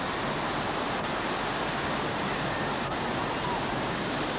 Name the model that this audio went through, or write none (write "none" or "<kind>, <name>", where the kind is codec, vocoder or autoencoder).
none